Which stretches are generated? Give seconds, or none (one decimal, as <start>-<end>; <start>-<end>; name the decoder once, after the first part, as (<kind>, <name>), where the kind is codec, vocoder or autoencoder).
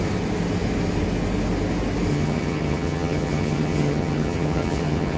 2.1-5.2 (vocoder, HiFi-GAN)